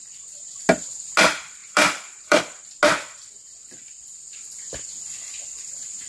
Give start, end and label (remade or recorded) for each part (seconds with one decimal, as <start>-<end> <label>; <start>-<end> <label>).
0.0-1.6 recorded; 1.6-2.4 remade; 2.4-6.1 recorded